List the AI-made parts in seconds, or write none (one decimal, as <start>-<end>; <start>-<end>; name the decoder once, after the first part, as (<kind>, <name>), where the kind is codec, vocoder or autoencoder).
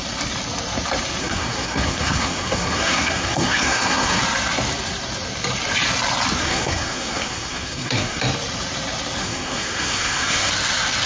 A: 1.2-4.2 (codec, SNAC); 6.4-8.2; 9.2-10.5